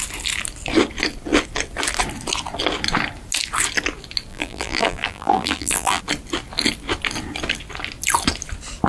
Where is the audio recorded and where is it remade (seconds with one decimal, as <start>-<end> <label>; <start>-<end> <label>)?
0.0-4.3 recorded; 4.3-6.0 remade; 6.0-8.9 recorded